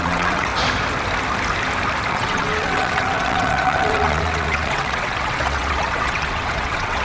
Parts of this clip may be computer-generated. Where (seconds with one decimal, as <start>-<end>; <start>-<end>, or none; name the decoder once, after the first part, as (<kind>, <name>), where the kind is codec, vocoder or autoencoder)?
0.0-0.5 (vocoder, WaveNeXt); 2.1-7.0